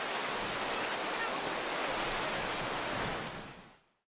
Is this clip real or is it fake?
real